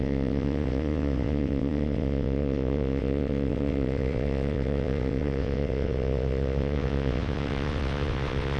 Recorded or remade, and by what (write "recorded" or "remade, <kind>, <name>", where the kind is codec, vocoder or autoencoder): remade, vocoder, WaveNeXt